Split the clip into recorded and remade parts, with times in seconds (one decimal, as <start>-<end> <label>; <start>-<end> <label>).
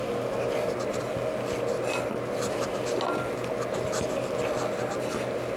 0.0-5.6 recorded